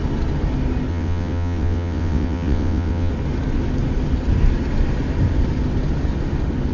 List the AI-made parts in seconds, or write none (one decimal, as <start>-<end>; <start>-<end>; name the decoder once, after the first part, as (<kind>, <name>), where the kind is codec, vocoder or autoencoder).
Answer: 0.9-3.1 (vocoder, WaveNeXt)